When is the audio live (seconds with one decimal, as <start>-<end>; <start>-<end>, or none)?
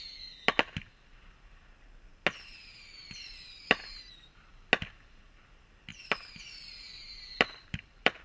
0.0-3.0; 3.8-5.9